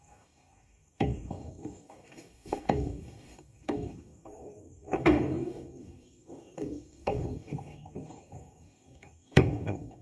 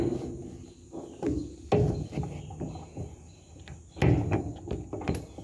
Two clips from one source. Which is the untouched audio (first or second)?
second